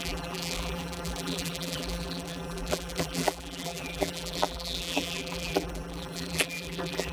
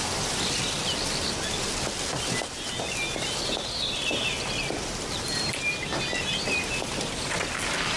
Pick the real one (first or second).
second